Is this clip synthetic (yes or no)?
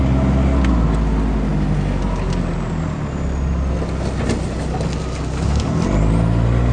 no